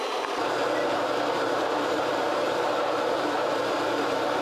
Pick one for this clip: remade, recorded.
remade